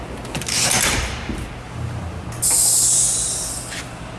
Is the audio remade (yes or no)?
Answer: no